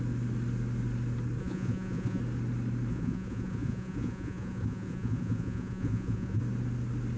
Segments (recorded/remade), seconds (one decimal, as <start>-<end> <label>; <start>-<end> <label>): 0.0-1.4 recorded; 1.4-2.2 remade; 2.2-2.9 recorded; 2.9-6.4 remade; 6.4-7.2 recorded